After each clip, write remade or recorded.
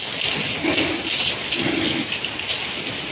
recorded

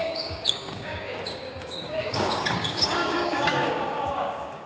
remade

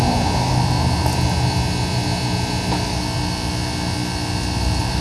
recorded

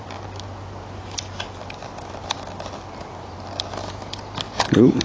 recorded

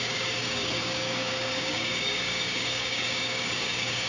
remade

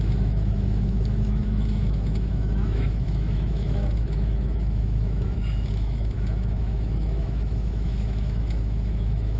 remade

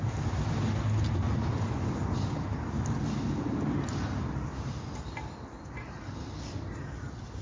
recorded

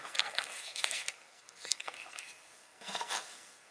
remade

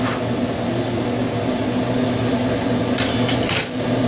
recorded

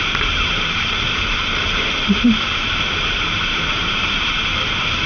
remade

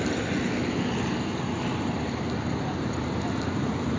recorded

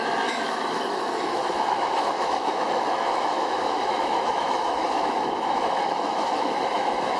remade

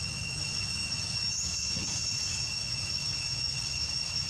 remade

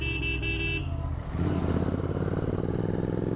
recorded